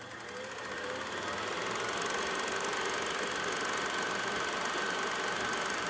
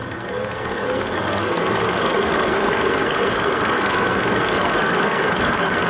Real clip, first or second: first